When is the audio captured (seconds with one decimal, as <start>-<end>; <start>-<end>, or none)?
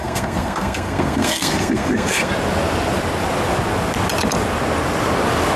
2.3-5.6